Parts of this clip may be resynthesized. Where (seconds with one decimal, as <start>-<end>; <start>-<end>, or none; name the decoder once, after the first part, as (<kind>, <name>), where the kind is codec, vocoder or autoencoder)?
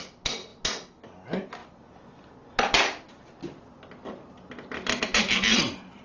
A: none